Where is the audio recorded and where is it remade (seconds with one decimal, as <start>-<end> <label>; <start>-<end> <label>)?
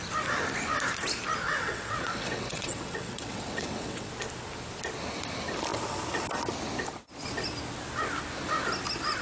0.0-1.5 recorded; 1.5-4.1 remade; 4.1-9.2 recorded